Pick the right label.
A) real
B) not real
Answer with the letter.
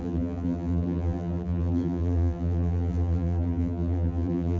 B